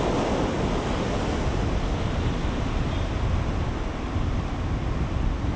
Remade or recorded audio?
recorded